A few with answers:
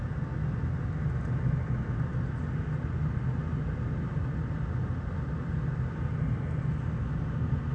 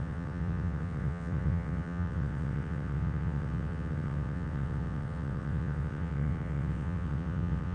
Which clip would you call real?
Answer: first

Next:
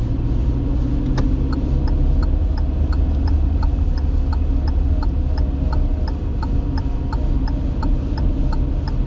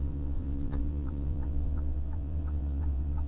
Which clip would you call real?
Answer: first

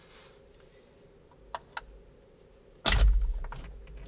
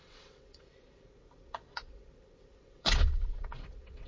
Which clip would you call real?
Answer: first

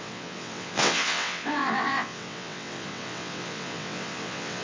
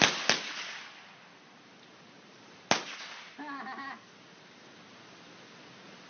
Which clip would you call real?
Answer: second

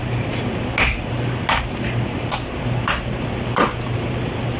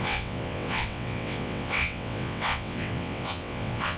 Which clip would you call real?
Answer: first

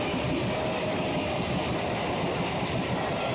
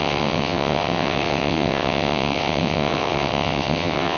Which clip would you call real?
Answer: first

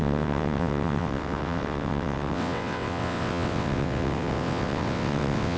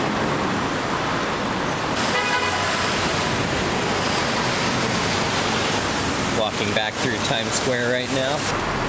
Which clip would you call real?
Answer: second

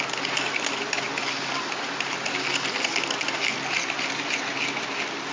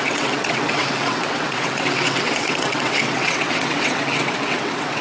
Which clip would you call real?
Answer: first